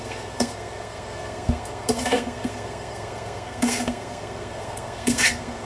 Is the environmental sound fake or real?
fake